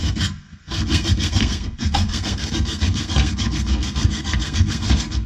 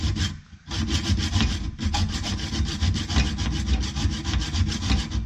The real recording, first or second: second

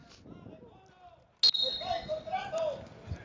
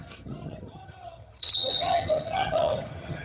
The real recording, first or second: first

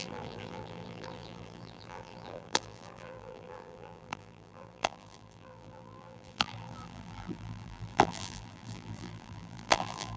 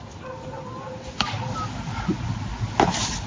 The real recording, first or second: second